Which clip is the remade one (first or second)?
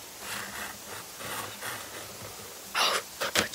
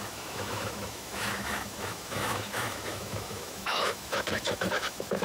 second